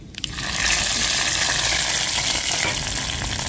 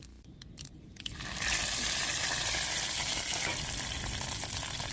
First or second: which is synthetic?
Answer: second